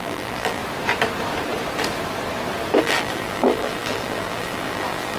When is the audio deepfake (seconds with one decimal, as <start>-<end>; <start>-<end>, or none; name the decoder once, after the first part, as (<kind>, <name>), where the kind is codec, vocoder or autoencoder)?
0.0-0.6 (vocoder, BigVGAN v2); 2.8-5.2

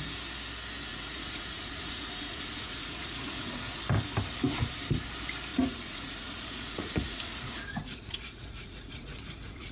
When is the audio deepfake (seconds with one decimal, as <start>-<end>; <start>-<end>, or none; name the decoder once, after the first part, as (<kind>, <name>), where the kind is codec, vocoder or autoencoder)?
0.9-3.8 (vocoder, Vocos); 5.5-9.7

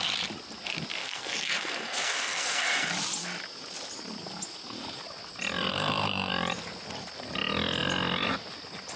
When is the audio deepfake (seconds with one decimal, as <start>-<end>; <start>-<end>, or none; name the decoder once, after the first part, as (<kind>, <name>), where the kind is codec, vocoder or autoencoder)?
1.0-2.9 (codec, SNAC); 5.7-6.3

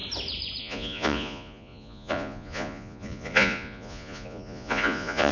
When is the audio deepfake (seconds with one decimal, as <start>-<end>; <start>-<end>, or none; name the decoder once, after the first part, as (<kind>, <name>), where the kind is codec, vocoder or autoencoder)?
0.6-5.3 (vocoder, Vocos)

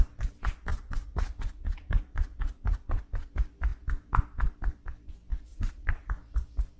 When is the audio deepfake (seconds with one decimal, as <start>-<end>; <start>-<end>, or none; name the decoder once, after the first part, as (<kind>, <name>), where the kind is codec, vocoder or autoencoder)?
0.7-3.3 (vocoder, Vocos); 5.5-6.1

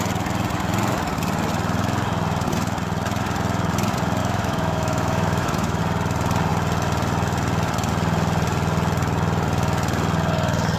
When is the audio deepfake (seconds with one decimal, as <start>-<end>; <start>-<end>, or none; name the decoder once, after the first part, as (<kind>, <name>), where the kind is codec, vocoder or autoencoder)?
4.2-5.8 (autoencoder, DAC-VAE)

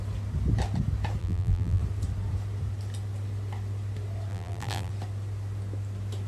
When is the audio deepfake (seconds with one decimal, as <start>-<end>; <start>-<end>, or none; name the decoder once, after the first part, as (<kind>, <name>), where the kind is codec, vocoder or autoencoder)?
1.2-1.8 (vocoder, BigVGAN v2); 4.3-4.9

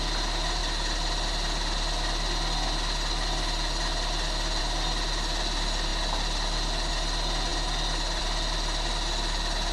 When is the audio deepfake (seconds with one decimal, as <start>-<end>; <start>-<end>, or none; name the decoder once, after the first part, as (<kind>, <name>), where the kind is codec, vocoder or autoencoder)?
none